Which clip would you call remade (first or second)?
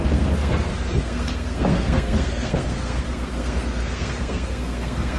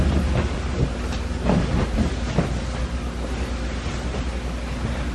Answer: first